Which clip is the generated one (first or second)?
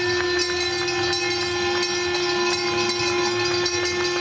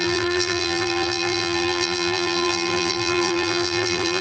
second